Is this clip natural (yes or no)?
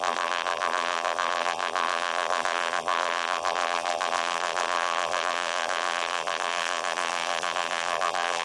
no